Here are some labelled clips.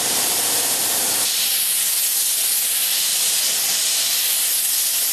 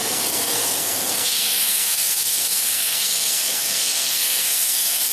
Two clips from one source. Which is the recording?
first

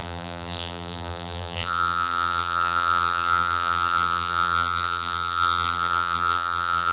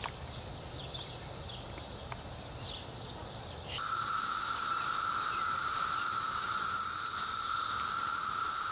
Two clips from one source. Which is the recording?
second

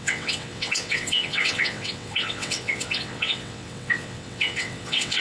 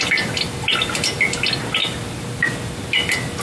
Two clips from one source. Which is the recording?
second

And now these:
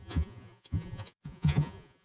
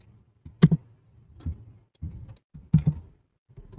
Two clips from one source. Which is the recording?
second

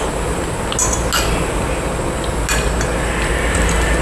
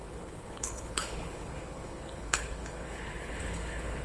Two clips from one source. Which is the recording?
first